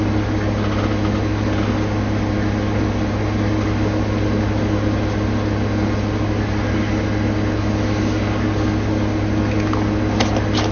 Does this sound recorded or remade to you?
recorded